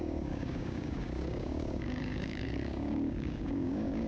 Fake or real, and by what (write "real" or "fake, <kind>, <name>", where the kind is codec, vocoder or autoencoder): fake, codec, DAC